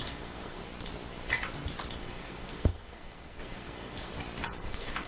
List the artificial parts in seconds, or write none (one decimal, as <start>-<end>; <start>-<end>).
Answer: 0.0-0.6; 2.0-4.1; 4.6-5.1